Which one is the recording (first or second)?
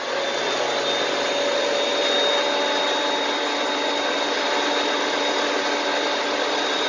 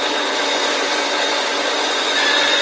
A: first